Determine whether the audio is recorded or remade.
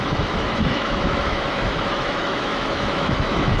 remade